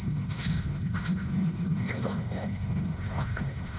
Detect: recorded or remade remade